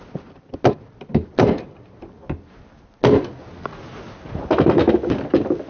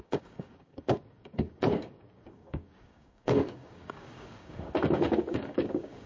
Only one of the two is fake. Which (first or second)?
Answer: second